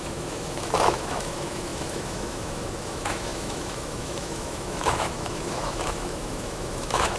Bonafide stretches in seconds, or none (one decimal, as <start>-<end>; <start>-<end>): none